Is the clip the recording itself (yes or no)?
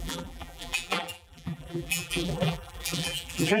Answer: no